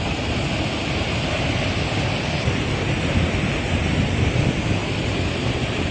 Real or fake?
real